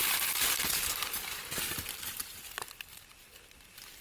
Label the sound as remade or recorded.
recorded